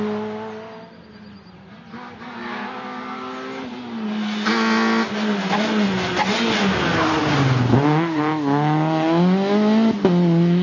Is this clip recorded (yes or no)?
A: yes